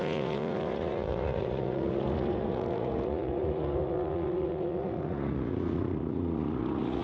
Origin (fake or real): fake